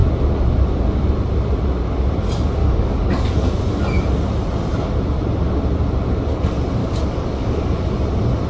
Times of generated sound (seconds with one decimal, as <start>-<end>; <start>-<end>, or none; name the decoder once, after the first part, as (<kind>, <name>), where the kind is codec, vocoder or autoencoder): 2.6-3.6 (codec, DAC); 6.8-7.6